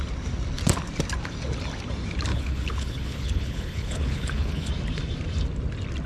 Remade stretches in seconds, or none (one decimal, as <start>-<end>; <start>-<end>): 2.3-4.7